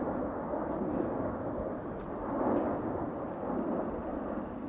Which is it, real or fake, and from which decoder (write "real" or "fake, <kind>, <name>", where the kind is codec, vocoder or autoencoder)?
real